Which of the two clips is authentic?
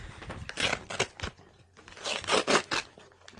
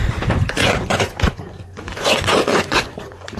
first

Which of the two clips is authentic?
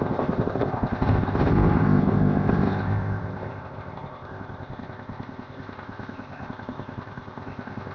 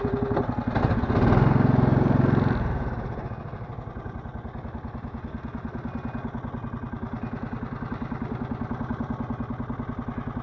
second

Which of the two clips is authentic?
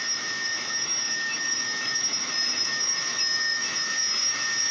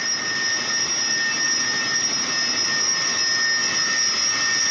second